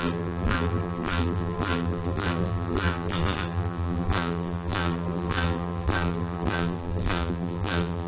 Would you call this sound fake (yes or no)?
yes